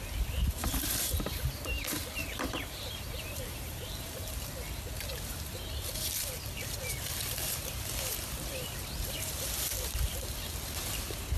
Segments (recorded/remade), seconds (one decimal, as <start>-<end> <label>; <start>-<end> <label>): 0.0-2.2 recorded; 2.2-4.3 remade; 4.3-11.4 recorded